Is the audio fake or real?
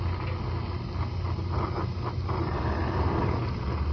real